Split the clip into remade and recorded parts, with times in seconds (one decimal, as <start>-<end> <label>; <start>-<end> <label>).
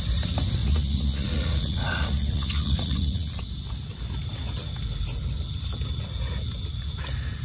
0.0-0.6 recorded; 0.6-3.4 remade; 3.4-7.4 recorded